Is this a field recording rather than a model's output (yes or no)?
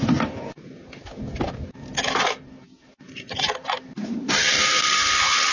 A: yes